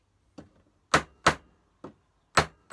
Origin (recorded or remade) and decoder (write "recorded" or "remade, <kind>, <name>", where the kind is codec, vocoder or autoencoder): recorded